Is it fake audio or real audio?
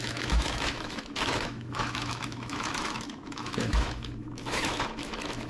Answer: fake